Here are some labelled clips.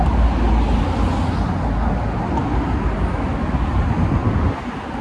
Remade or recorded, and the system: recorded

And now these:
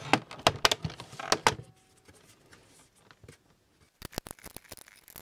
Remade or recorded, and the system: recorded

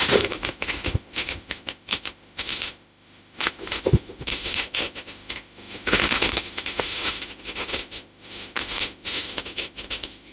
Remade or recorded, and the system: remade, autoencoder, DAC-VAE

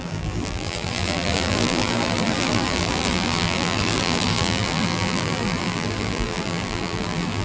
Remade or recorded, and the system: remade, vocoder, BigVGAN v2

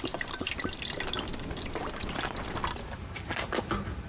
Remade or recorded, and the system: recorded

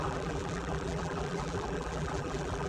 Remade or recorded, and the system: remade, vocoder, BigVGAN v2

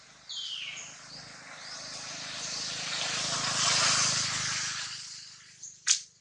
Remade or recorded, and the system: recorded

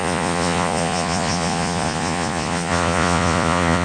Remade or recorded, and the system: remade, vocoder, Vocos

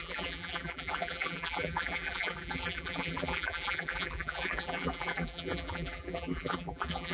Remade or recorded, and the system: remade, vocoder, BigVGAN v2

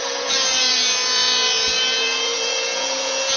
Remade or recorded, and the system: remade, vocoder, Vocos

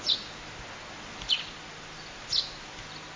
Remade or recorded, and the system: recorded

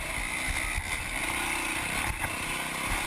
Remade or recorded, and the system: recorded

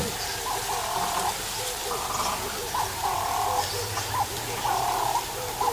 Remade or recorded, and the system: recorded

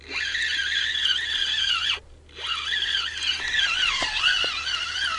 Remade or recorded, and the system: recorded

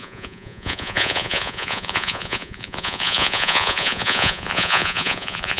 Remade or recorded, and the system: remade, vocoder, Vocos